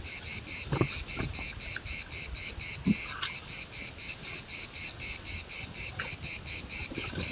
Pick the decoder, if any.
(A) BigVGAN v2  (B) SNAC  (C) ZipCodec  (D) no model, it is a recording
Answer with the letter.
D